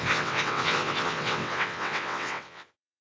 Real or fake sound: fake